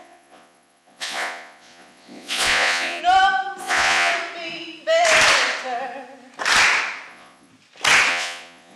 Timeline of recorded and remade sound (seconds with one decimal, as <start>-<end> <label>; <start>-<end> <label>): 0.0-3.0 remade; 3.0-3.6 recorded; 3.6-4.1 remade; 4.1-7.1 recorded; 7.1-7.5 remade; 7.5-8.1 recorded; 8.1-8.8 remade